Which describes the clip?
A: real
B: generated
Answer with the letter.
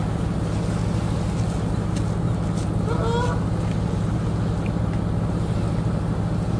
A